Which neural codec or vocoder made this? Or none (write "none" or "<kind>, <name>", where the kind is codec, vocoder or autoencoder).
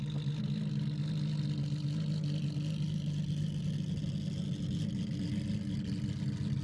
none